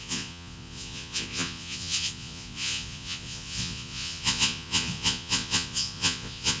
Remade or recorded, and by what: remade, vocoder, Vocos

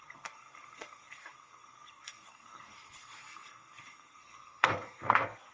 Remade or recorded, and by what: remade, codec, SNAC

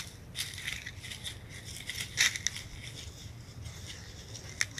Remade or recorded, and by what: recorded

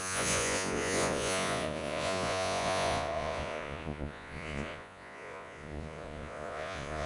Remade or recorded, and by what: remade, vocoder, Vocos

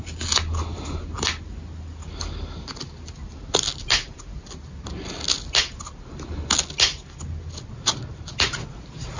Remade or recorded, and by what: recorded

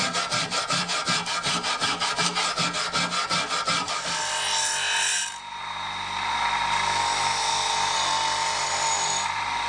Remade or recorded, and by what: recorded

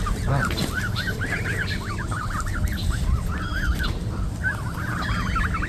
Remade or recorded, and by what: recorded